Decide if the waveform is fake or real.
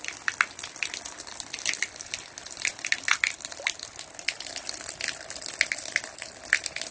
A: real